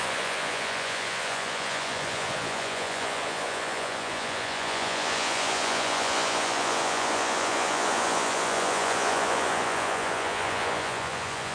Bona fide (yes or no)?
no